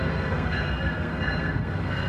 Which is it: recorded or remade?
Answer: remade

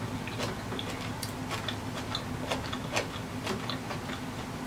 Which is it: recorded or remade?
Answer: recorded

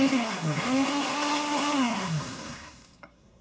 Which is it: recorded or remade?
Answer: remade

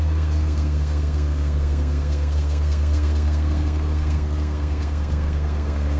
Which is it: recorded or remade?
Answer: remade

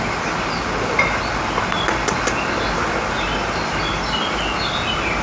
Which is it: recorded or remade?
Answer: recorded